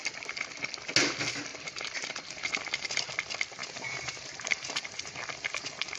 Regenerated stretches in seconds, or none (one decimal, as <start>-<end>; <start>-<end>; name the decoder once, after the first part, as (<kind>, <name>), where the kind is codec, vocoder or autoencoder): 1.5-2.9 (vocoder, BigVGAN v2); 3.6-5.1